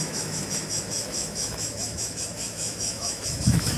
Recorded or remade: remade